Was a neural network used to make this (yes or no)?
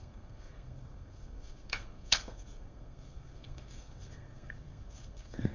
yes